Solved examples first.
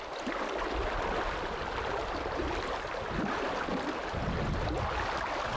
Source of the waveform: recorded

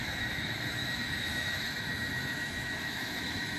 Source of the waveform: remade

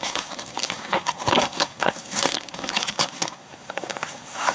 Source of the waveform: remade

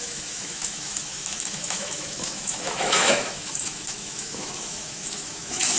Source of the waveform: remade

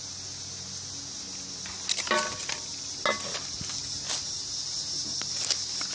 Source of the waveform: recorded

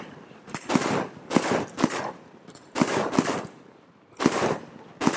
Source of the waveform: remade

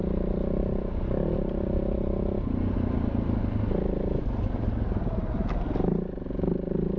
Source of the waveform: recorded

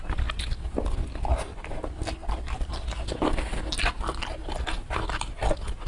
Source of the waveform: recorded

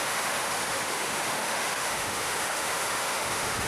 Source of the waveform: remade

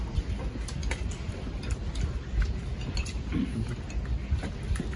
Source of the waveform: recorded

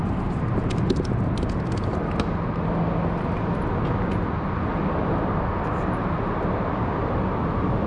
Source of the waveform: recorded